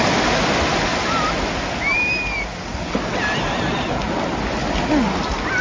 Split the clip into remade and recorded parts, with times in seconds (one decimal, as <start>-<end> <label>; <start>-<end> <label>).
0.0-5.6 recorded